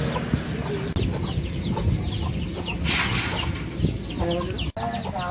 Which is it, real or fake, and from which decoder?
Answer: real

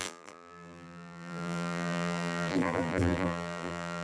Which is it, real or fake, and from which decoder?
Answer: fake, vocoder, BigVGAN v2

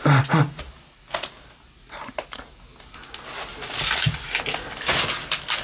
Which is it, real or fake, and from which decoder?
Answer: real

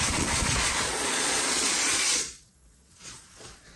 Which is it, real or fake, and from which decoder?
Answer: fake, vocoder, Vocos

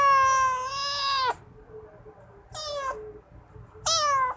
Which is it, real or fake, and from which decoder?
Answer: real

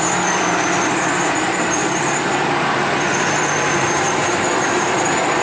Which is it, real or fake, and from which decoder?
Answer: fake, vocoder, BigVGAN v2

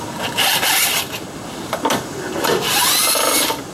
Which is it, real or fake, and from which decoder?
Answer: real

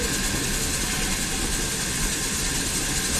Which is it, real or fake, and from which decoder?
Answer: real